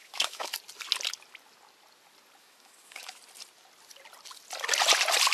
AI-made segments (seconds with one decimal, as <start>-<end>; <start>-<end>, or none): 0.0-0.5; 2.4-3.2